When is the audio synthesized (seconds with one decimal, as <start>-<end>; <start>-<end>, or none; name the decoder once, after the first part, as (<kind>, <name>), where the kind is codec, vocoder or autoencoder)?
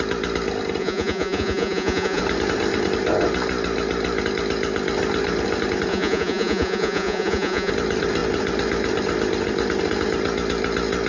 0.8-2.2 (vocoder, Vocos); 5.9-7.7